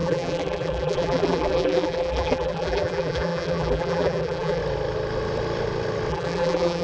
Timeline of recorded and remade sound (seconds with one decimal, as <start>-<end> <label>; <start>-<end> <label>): 0.0-4.6 remade; 4.6-6.1 recorded; 6.1-6.8 remade